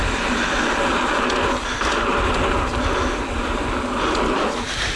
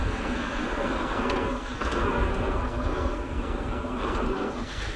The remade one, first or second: second